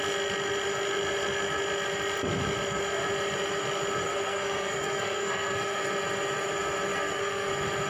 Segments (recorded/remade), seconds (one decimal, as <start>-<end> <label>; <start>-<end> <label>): 0.0-4.0 recorded; 4.0-5.8 remade; 5.8-6.9 recorded; 6.9-7.5 remade; 7.5-7.9 recorded